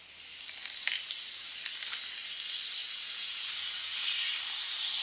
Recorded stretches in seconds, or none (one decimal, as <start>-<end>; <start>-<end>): 0.0-2.8; 3.5-5.0